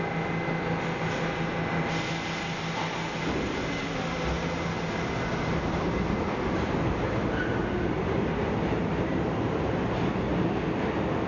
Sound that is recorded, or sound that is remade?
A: recorded